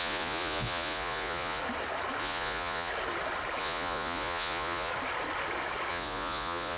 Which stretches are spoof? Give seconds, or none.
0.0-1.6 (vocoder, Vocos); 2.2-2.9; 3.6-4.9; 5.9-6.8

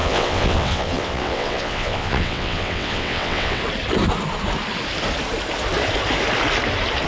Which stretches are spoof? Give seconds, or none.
0.0-3.6 (vocoder, WaveNeXt)